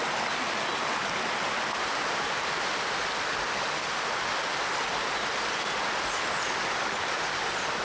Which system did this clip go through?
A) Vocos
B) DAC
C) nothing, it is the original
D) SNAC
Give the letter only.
C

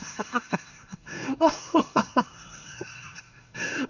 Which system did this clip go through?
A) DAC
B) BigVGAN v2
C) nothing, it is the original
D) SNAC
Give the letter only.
D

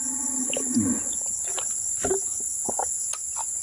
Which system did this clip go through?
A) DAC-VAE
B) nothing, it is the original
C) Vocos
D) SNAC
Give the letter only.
B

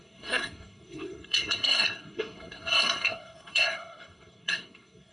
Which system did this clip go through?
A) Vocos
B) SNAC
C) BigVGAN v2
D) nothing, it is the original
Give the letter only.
B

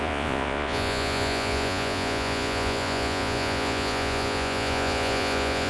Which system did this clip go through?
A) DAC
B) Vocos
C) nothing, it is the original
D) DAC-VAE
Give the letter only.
B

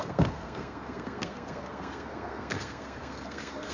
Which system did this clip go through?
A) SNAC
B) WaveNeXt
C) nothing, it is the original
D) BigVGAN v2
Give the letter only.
A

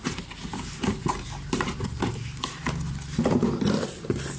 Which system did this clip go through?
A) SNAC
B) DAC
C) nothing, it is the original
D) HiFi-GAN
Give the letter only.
C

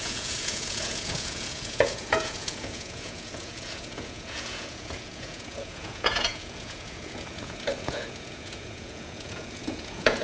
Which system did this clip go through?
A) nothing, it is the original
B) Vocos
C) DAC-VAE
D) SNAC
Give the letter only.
B